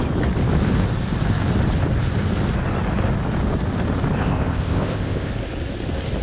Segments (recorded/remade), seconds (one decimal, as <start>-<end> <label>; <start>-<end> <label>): 0.0-4.2 recorded; 4.2-5.3 remade; 5.3-6.2 recorded